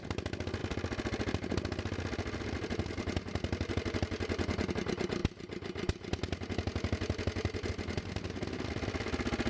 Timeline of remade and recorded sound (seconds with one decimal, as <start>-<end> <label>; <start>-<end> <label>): 0.0-9.5 recorded